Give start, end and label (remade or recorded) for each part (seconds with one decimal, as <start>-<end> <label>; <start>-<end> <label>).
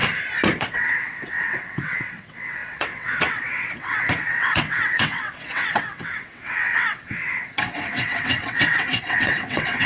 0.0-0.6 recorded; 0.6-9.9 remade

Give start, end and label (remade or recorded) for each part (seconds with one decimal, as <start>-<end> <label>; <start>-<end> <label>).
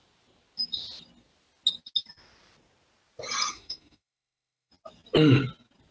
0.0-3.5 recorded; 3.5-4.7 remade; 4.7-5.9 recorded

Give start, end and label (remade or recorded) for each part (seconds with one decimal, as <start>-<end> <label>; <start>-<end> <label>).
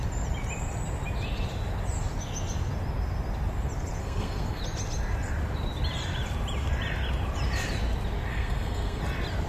0.0-4.0 recorded; 4.0-4.6 remade; 4.6-8.3 recorded; 8.3-9.0 remade; 9.0-9.5 recorded